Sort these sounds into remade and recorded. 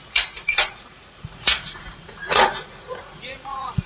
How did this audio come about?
remade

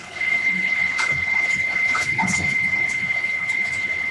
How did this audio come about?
remade